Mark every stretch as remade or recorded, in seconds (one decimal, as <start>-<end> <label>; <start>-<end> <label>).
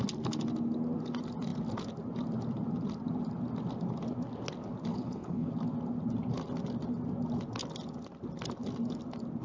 0.0-4.9 recorded; 4.9-5.5 remade; 5.5-9.4 recorded